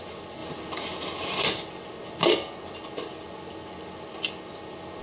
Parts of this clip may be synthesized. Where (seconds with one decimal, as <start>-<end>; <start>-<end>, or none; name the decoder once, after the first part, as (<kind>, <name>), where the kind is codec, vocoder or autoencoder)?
none